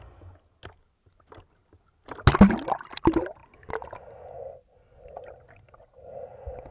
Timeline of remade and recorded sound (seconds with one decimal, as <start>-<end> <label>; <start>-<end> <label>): 0.0-6.7 recorded

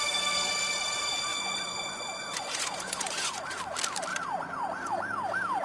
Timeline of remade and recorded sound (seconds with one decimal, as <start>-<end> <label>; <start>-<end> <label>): 0.0-1.3 recorded; 1.3-3.6 remade; 3.6-4.1 recorded; 4.1-4.9 remade; 4.9-5.6 recorded

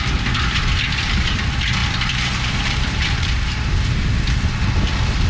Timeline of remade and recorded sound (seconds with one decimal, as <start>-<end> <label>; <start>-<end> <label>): 0.0-1.8 recorded; 1.8-4.0 remade; 4.0-5.3 recorded

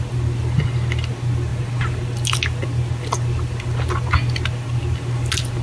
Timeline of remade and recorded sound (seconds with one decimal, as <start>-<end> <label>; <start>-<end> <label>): 0.0-5.6 recorded

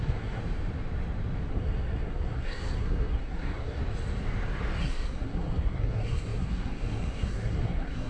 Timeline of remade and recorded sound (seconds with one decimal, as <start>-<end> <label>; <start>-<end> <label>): 0.0-0.4 remade; 0.4-1.5 recorded; 1.5-3.8 remade; 3.8-4.8 recorded; 4.8-8.1 remade

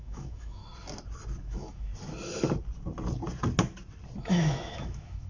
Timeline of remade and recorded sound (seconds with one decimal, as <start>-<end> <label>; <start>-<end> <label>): 0.0-0.6 remade; 0.6-1.4 recorded; 1.4-1.9 remade; 1.9-4.2 recorded; 4.2-5.3 remade

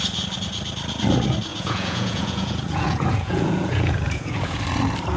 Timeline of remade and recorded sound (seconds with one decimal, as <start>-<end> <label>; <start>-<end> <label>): 0.0-1.5 recorded; 1.5-4.6 remade; 4.6-5.2 recorded

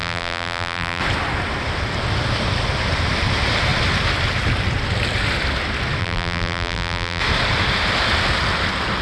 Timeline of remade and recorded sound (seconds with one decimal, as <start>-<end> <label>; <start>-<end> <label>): 0.0-1.0 remade; 1.0-6.0 recorded; 6.0-7.2 remade; 7.2-9.0 recorded